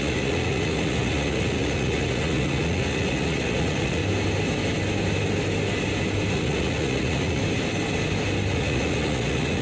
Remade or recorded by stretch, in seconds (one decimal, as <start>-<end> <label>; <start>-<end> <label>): 0.0-4.0 remade; 4.0-6.3 recorded; 6.3-7.4 remade; 7.4-8.5 recorded; 8.5-9.6 remade